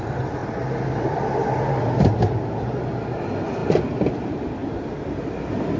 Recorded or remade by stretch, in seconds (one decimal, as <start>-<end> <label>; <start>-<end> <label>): 0.0-5.8 recorded